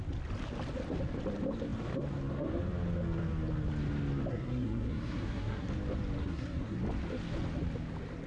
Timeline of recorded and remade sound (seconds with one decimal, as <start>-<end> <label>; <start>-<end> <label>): 0.0-4.3 recorded; 4.3-5.7 remade; 5.7-6.2 recorded; 6.2-6.8 remade; 6.8-8.3 recorded